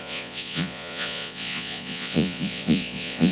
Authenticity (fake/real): fake